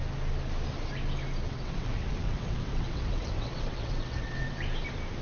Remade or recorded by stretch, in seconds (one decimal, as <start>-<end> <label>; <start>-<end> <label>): 0.0-1.4 recorded; 1.4-4.5 remade; 4.5-5.2 recorded